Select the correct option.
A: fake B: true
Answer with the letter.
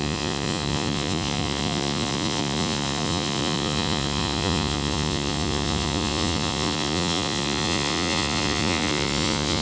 A